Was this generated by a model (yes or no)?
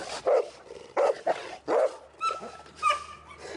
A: no